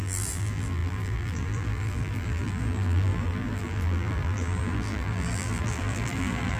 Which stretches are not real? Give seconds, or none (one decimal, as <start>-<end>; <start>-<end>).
0.0-6.6